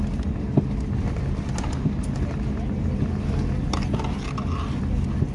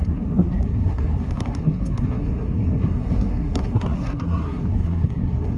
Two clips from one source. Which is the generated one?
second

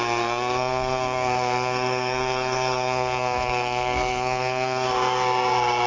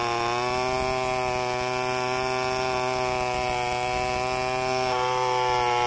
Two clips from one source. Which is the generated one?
first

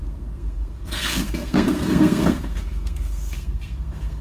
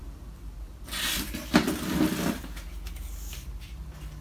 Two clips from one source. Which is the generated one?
first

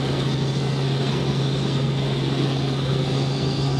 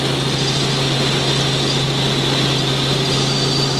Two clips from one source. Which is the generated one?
first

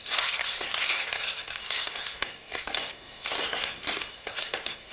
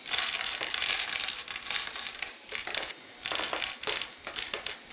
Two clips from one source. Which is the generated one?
first